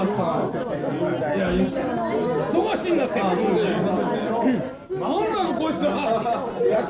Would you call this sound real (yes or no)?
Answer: yes